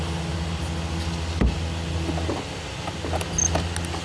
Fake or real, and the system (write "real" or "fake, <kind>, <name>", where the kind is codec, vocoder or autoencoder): real